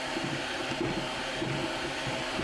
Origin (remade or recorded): remade